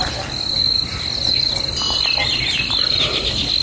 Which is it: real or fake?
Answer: real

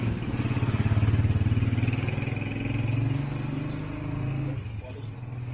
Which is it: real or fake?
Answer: real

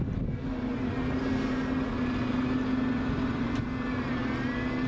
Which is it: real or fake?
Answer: real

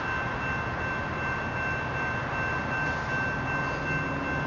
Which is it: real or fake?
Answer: real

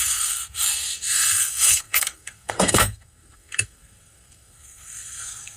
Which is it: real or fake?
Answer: fake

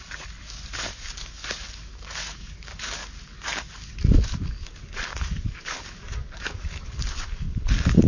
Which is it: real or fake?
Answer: fake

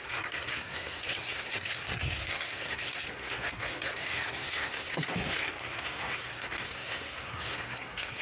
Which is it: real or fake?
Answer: fake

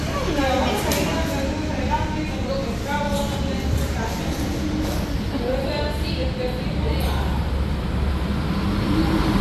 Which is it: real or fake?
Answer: real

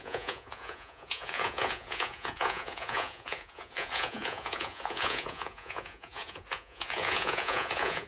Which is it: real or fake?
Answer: fake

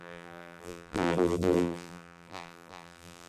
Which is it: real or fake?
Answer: fake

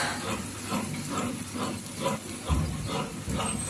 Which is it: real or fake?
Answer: real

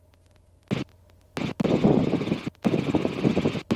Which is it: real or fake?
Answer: real